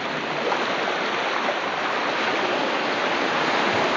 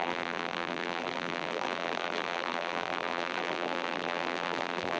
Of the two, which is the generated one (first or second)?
second